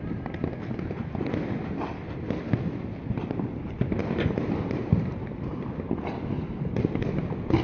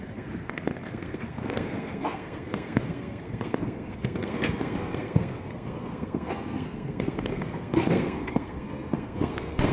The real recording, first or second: first